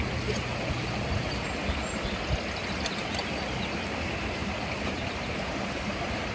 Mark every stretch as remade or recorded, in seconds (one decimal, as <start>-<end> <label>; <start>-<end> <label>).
0.0-6.3 recorded